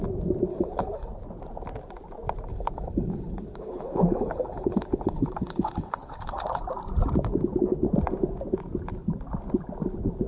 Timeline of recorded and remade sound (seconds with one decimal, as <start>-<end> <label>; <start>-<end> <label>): 0.0-0.5 recorded; 0.5-1.1 remade; 1.1-2.5 recorded; 2.5-6.6 remade; 6.6-10.3 recorded